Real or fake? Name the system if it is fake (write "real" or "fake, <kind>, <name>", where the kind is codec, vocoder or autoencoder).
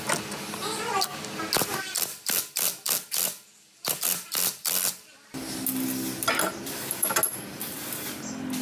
real